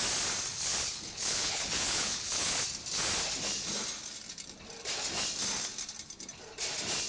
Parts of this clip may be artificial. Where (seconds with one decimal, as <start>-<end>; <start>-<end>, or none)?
0.5-2.6